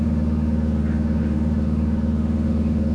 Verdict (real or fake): fake